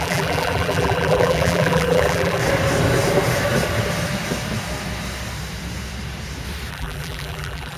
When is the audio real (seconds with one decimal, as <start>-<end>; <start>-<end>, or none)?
2.4-6.7